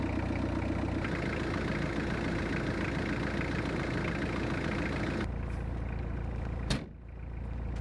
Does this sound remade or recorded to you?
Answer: recorded